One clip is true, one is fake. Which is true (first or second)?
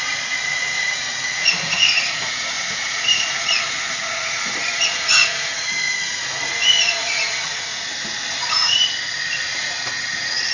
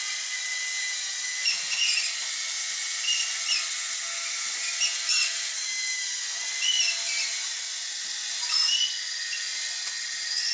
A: second